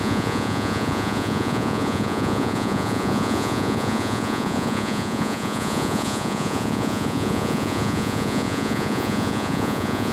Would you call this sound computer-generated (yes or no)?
yes